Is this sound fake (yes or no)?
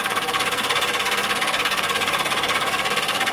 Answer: yes